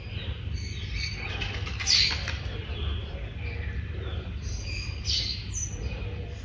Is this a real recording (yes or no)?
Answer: yes